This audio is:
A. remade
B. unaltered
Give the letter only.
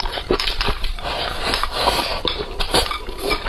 A